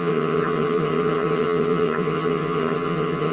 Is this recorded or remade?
remade